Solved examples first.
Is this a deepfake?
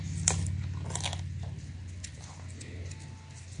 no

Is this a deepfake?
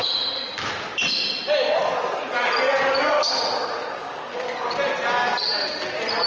no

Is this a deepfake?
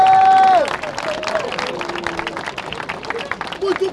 no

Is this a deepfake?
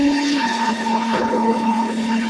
yes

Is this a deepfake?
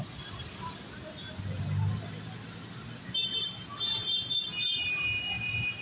no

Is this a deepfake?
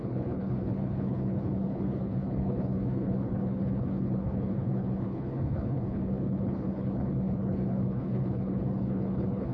yes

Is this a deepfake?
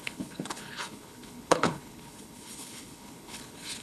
yes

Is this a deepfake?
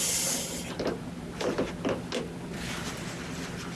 no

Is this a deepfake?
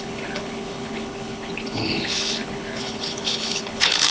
yes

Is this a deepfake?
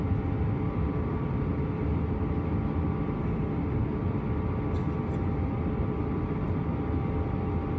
no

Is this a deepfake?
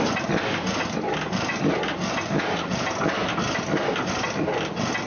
no